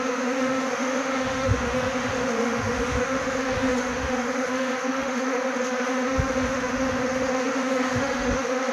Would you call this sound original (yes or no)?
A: no